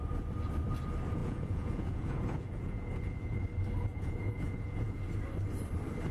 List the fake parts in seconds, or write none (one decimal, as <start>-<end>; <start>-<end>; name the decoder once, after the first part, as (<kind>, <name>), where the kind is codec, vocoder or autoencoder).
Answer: 1.2-3.4 (vocoder, Vocos); 3.9-5.0